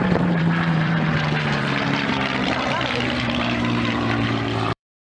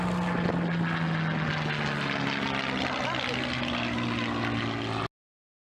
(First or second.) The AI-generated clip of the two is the first